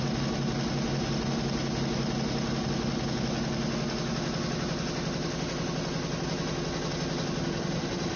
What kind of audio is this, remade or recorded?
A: recorded